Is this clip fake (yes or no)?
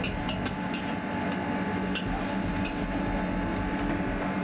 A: no